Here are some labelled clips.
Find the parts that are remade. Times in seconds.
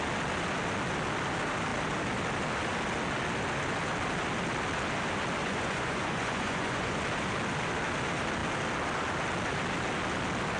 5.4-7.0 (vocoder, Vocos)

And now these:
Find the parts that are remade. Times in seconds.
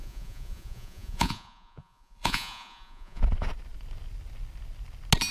0.0-3.2 (vocoder, Vocos)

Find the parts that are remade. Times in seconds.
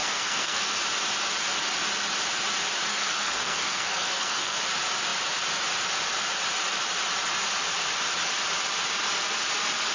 0.0-0.8 (codec, SNAC); 2.9-4.6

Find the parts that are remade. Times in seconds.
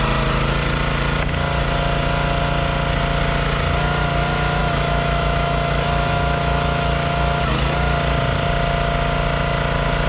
4.6-7.4 (autoencoder, DAC-VAE)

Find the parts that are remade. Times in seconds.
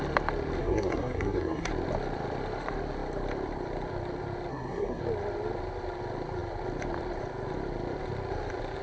0.6-1.7 (codec, SNAC); 4.5-5.0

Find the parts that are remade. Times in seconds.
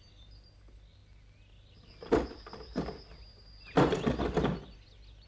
none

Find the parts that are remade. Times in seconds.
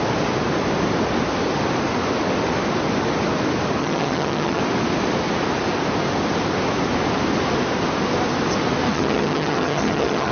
3.8-4.6 (vocoder, HiFi-GAN); 8.9-10.3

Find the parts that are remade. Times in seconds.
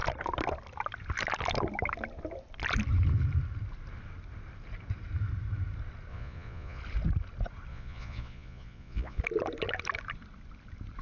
6.1-6.8 (vocoder, Vocos); 7.7-9.2